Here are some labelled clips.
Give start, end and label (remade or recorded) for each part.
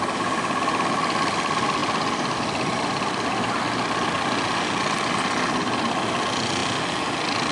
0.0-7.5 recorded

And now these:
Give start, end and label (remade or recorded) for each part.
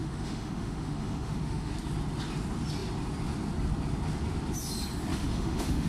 0.0-1.7 remade; 1.7-5.1 recorded; 5.1-5.9 remade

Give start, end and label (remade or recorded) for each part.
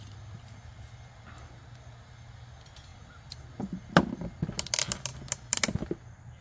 0.0-6.4 recorded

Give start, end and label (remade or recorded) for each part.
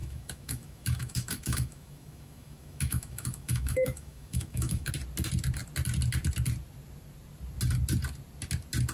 0.0-4.9 remade; 4.9-8.9 recorded